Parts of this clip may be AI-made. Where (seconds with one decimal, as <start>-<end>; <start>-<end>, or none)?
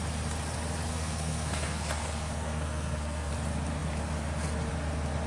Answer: 0.9-3.3